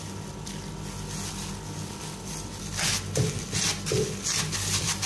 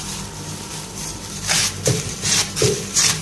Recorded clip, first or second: first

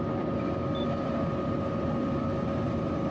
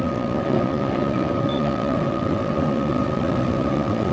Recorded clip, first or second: first